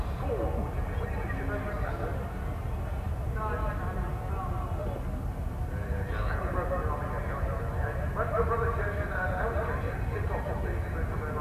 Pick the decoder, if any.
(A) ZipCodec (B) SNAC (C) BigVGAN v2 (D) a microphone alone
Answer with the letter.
D